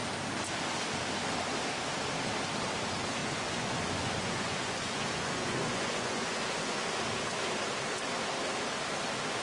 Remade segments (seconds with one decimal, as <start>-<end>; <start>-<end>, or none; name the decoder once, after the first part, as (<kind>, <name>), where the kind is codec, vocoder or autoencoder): 3.2-7.0 (vocoder, Vocos)